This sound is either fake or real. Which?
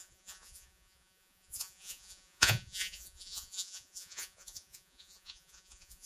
fake